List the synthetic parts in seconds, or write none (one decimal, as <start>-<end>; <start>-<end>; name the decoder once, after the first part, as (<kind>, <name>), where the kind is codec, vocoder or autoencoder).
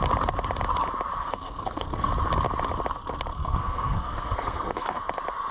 1.2-2.1 (codec, SNAC); 3.3-5.0